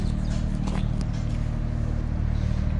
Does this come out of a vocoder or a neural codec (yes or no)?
no